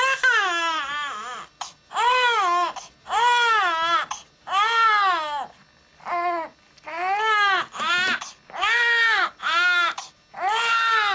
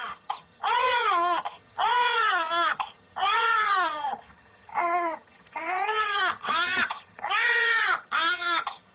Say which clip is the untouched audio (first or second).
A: first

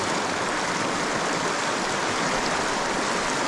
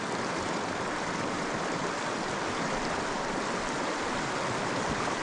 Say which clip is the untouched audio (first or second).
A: first